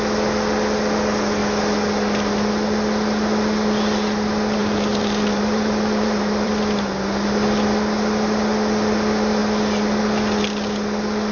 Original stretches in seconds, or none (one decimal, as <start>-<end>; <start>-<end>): 0.0-4.6; 6.5-11.3